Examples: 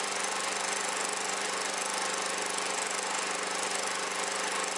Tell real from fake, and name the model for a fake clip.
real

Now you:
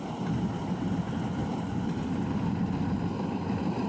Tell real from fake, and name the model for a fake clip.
real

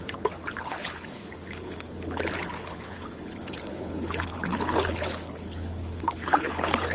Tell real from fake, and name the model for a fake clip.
fake, codec, HILCodec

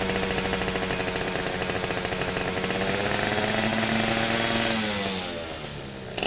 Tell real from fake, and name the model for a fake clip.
real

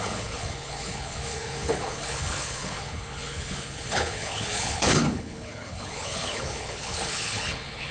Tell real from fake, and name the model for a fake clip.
fake, codec, HILCodec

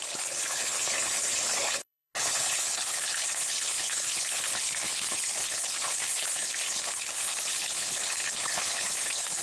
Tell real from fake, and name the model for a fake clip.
fake, codec, HILCodec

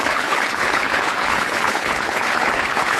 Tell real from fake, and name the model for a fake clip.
fake, codec, HILCodec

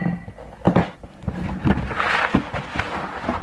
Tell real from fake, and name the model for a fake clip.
real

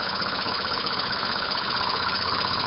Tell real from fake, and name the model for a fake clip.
fake, codec, HILCodec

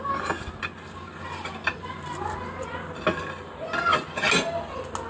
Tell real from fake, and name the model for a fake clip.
real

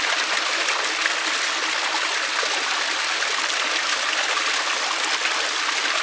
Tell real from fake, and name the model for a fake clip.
real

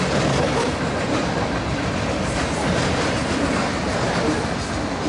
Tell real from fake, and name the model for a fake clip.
real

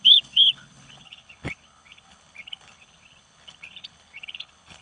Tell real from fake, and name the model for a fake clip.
fake, codec, HILCodec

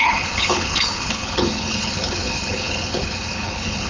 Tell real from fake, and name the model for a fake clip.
fake, codec, HILCodec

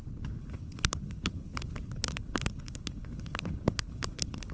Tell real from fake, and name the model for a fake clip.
fake, codec, HILCodec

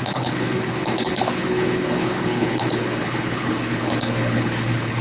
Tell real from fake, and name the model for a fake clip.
fake, codec, HILCodec